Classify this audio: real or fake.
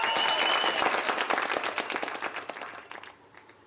real